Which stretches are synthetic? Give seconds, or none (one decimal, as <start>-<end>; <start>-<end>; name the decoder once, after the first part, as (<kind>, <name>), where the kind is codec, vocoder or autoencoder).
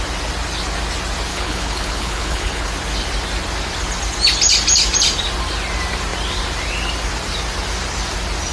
1.3-2.7 (codec, HILCodec)